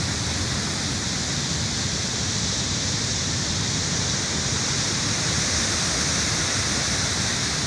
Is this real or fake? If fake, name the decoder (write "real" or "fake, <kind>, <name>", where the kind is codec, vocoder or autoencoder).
real